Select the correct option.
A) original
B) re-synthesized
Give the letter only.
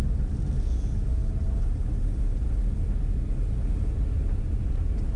A